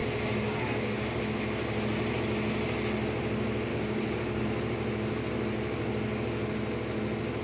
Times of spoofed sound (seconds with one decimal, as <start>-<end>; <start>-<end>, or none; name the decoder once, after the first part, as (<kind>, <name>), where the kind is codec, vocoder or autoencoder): 0.0-1.2 (codec, DAC); 3.7-4.4